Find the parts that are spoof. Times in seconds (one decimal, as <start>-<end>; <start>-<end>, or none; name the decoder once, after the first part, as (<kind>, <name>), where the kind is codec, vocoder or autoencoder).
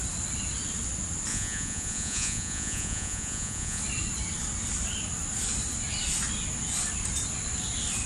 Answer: 1.3-3.8 (vocoder, Vocos)